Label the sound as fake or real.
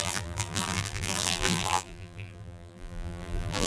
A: fake